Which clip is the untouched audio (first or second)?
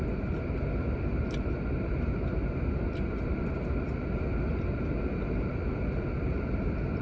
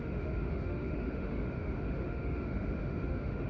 first